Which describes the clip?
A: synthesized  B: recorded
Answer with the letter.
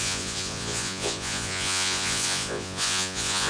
A